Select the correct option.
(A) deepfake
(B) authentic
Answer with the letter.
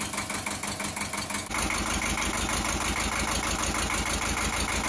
B